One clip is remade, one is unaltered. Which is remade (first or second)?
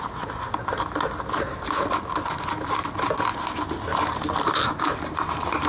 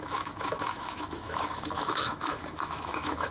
second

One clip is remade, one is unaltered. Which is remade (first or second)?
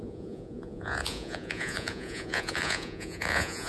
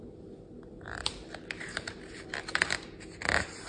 first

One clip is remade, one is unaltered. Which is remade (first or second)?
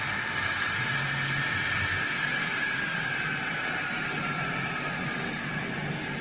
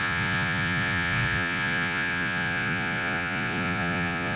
second